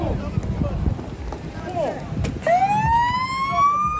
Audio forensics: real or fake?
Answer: real